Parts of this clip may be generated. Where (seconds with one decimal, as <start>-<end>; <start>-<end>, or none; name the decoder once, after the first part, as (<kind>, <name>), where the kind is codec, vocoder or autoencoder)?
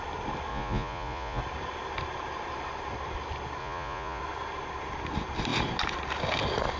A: 0.5-1.4 (vocoder, Vocos); 3.6-4.2